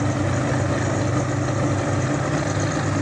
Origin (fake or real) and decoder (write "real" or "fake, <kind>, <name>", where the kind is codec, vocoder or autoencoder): real